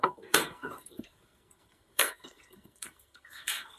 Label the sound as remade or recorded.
remade